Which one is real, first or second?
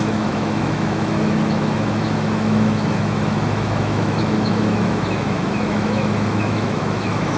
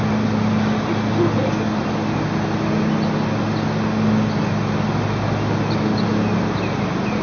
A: second